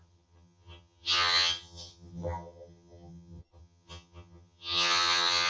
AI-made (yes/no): yes